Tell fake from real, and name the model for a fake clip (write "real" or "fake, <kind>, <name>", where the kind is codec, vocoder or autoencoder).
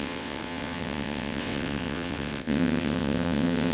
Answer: fake, vocoder, WaveNeXt